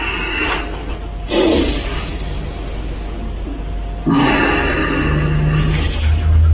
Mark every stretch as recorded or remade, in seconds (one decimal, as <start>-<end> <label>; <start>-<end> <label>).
0.0-0.8 recorded; 0.8-1.4 remade; 1.4-2.1 recorded; 2.1-5.0 remade; 5.0-6.5 recorded

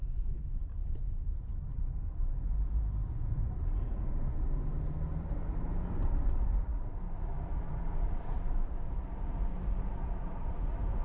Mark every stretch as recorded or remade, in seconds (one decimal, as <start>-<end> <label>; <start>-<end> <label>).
0.0-11.0 remade